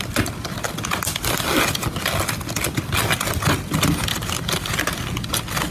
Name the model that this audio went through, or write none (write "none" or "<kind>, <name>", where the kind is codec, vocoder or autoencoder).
none